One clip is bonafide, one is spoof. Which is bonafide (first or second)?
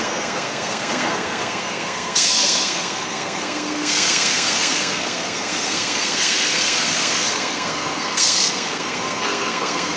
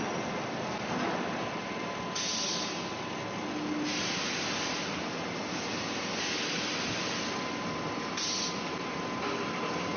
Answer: second